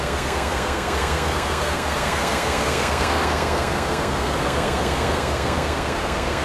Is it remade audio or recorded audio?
remade